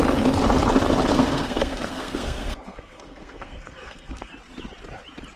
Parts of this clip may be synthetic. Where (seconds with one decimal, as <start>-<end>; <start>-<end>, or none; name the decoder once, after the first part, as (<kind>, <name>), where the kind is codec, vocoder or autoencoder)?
1.1-4.3 (codec, SNAC)